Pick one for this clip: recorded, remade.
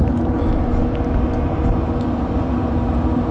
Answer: recorded